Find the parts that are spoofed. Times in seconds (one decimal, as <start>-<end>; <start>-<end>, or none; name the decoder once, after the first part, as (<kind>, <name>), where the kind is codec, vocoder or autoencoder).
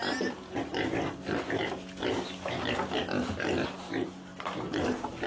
none